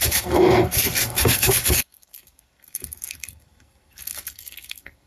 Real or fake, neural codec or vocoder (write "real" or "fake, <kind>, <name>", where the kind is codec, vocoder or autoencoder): fake, codec, SNAC